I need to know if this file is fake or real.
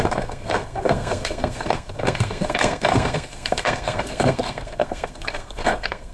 fake